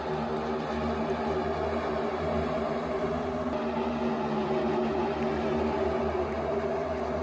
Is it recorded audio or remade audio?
recorded